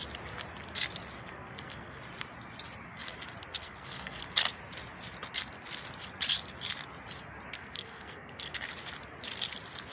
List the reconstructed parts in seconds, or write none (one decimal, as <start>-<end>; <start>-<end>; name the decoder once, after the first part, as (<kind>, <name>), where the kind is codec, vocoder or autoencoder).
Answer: 1.2-2.0 (codec, SNAC); 3.6-4.2; 7.5-8.5